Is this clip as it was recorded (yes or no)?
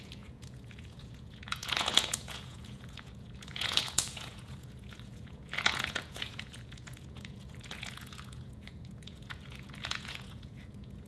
no